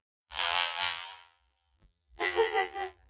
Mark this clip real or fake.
fake